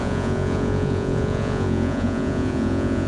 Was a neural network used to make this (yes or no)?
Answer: yes